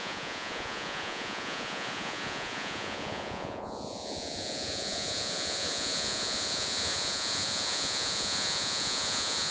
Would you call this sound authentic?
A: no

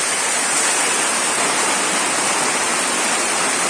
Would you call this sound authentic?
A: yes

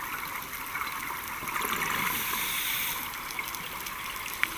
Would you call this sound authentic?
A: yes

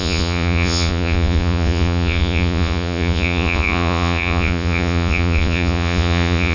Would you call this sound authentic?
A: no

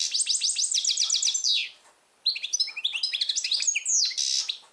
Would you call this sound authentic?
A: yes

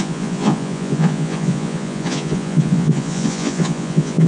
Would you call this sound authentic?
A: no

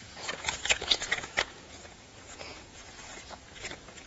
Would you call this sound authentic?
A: no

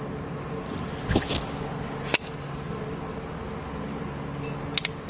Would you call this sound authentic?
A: yes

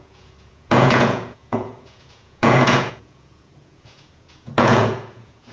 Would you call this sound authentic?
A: no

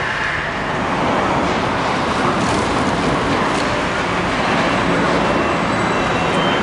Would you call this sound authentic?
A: yes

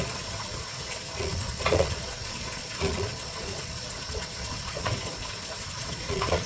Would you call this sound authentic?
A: no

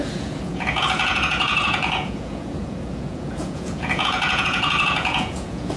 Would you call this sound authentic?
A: no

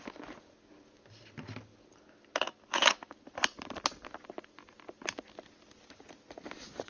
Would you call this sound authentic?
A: yes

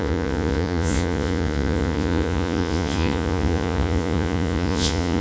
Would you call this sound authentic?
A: no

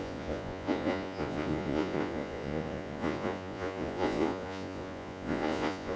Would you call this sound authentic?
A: no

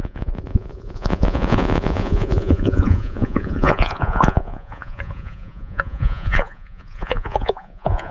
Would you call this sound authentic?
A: no